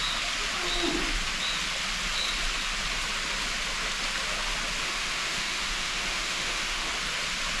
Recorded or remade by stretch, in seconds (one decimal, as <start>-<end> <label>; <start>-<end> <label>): 0.0-4.8 recorded; 4.8-6.9 remade; 6.9-7.6 recorded